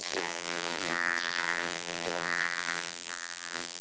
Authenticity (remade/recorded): remade